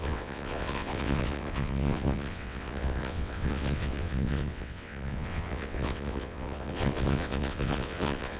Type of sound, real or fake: fake